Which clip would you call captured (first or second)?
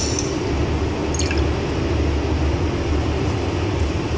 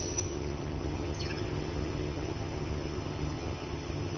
first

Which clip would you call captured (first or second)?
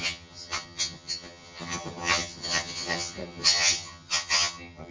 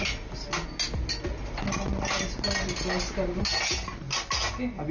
second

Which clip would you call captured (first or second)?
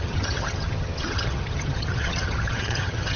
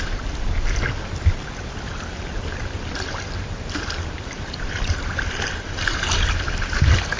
second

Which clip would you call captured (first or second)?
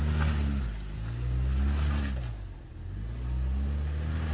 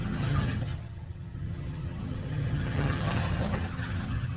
first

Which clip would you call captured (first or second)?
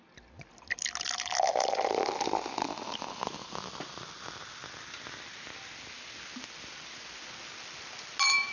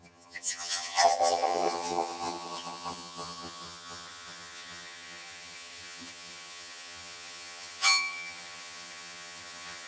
first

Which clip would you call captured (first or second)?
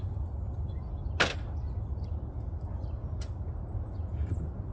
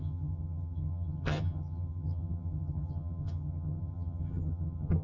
first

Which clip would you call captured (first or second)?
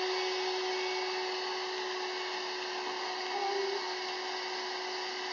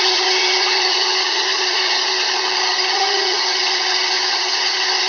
first